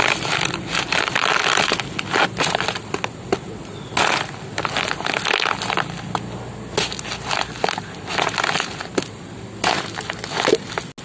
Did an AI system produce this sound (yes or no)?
no